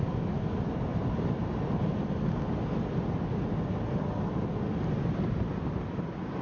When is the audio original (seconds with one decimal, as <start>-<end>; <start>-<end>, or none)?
0.0-6.4